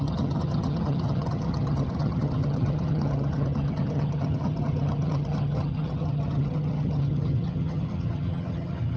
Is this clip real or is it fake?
fake